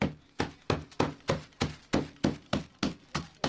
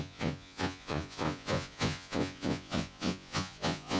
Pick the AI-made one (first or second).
second